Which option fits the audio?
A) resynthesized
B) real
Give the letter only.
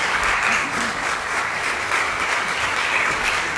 A